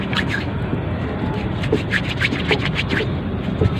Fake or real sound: real